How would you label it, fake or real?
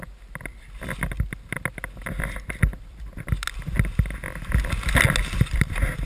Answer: real